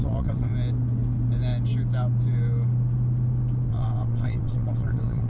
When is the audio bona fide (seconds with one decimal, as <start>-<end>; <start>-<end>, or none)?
0.5-3.7